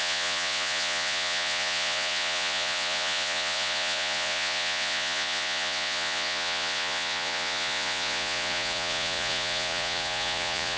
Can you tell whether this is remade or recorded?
remade